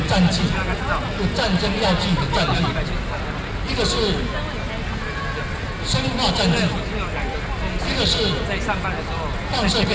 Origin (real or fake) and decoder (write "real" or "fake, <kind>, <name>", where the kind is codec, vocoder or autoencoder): real